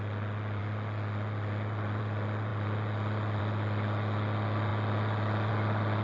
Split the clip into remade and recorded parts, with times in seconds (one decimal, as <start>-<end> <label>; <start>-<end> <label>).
0.0-6.0 recorded